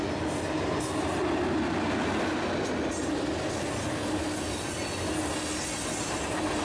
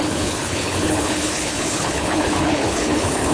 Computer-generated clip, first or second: second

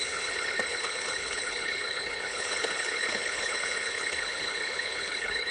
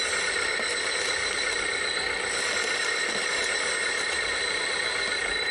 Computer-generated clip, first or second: first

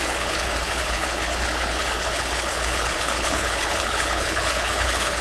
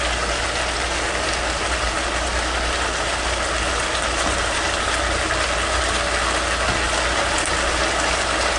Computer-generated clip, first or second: first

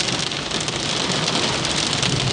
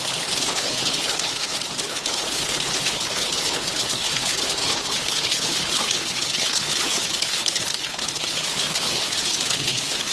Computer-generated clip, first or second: second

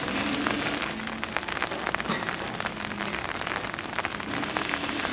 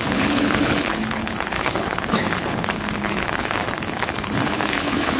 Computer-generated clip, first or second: second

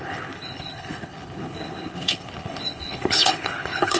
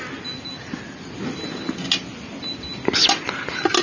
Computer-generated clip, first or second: first